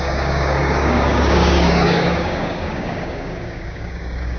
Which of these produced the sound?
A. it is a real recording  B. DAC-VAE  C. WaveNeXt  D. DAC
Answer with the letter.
D